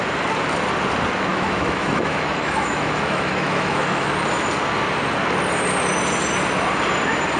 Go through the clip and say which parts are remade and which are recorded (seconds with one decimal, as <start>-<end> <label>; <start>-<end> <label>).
0.0-1.3 recorded; 1.3-4.1 remade; 4.1-7.4 recorded

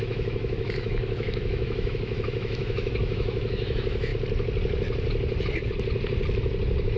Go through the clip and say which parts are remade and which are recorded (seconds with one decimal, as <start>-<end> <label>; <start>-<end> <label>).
0.0-4.1 remade; 4.1-7.0 recorded

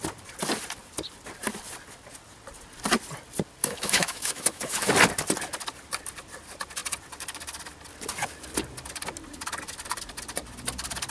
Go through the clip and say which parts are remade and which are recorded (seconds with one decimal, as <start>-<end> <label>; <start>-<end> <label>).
0.0-3.6 recorded; 3.6-4.9 remade; 4.9-11.1 recorded

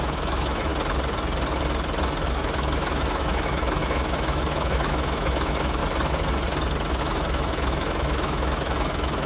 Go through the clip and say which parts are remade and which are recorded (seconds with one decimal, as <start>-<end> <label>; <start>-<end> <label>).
0.0-0.7 remade; 0.7-2.3 recorded; 2.3-5.8 remade; 5.8-7.0 recorded; 7.0-9.3 remade

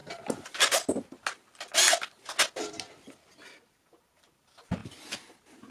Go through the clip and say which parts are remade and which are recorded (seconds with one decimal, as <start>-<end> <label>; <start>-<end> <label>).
0.0-5.7 recorded

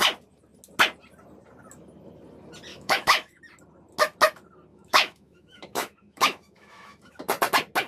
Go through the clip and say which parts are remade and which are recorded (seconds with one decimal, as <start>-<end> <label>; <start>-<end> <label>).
0.0-2.7 recorded; 2.7-3.4 remade; 3.4-4.7 recorded; 4.7-7.2 remade; 7.2-7.9 recorded

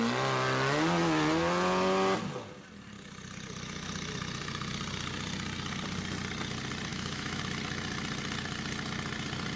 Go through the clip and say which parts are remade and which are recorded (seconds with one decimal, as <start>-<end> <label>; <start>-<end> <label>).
0.0-6.9 recorded; 6.9-7.4 remade; 7.4-9.6 recorded